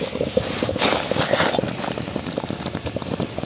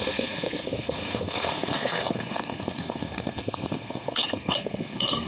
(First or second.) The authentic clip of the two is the first